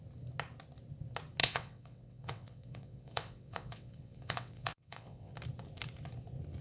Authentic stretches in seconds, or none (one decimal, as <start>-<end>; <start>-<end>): 0.0-1.4; 5.3-6.6